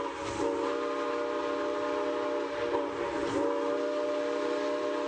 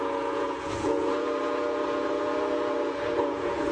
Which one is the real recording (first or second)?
first